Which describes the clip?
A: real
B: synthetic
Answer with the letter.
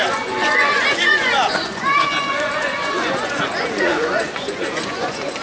B